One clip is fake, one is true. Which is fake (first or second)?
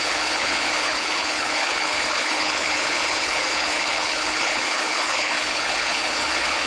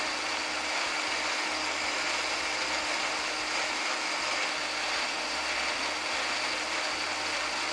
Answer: first